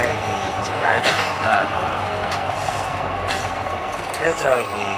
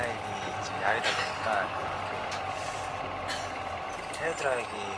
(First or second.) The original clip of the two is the second